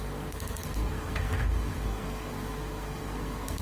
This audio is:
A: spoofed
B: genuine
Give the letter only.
A